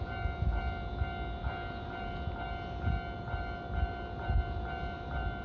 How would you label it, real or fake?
real